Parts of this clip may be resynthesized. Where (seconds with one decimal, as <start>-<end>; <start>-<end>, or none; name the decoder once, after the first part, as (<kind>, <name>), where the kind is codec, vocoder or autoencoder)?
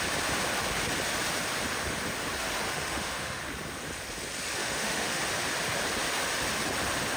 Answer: 2.7-3.4 (autoencoder, DAC-VAE); 4.6-5.2